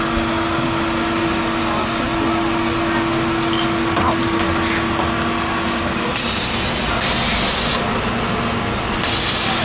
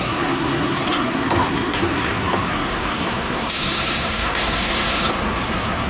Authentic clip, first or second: first